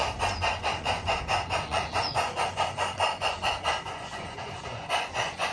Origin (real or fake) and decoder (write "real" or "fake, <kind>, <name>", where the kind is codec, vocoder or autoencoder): fake, vocoder, Vocos